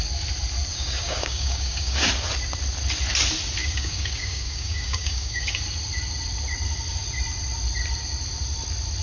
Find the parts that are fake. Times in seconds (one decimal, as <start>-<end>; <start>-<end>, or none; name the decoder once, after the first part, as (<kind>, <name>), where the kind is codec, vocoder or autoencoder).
0.7-2.1 (codec, DAC); 3.6-5.6